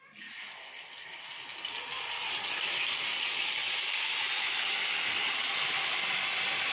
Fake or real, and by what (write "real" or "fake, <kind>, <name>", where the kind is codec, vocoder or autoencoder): real